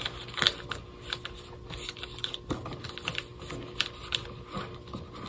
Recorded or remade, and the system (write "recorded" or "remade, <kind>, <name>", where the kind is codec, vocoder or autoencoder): recorded